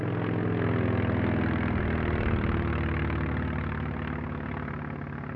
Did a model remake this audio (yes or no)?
no